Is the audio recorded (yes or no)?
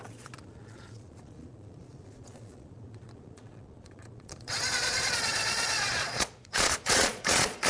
no